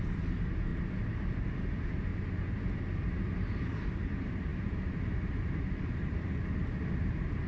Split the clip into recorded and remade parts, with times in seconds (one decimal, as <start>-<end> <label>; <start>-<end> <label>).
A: 0.0-0.7 remade; 0.7-1.4 recorded; 1.4-2.1 remade; 2.1-3.0 recorded; 3.0-7.5 remade